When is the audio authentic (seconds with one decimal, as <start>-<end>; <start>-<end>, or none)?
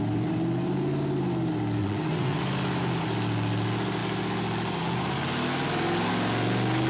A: 0.0-1.8; 2.4-6.9